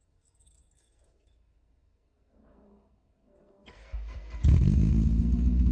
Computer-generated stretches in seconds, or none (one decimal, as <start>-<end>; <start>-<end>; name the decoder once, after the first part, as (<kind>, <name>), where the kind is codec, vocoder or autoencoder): 0.0-5.7 (codec, SNAC)

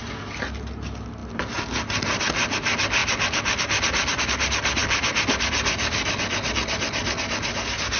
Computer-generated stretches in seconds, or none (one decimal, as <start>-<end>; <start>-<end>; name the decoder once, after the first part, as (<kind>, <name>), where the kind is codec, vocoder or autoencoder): 3.0-4.2 (vocoder, BigVGAN v2); 4.8-6.2

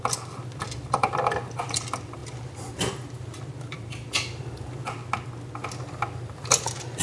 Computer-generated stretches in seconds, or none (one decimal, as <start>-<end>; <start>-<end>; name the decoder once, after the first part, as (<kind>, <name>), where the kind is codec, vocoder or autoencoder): 0.0-5.0 (vocoder, BigVGAN v2); 5.9-7.0

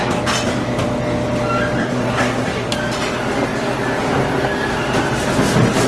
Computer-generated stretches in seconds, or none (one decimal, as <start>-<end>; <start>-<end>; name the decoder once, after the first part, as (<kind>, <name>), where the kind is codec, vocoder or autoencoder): 1.8-2.7 (codec, SNAC)